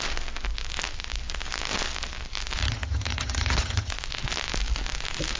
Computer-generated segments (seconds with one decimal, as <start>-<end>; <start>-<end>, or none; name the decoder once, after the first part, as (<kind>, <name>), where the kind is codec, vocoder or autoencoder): 2.6-3.9 (vocoder, HiFi-GAN)